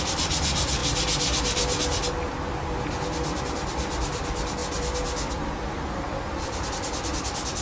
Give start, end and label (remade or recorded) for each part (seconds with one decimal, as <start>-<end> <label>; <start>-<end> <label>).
0.0-0.8 remade; 0.8-3.4 recorded; 3.4-4.6 remade; 4.6-5.4 recorded; 5.4-7.6 remade